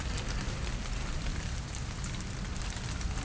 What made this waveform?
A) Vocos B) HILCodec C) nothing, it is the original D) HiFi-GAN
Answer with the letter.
C